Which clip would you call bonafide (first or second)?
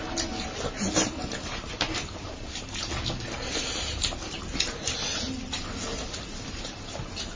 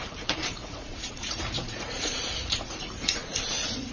first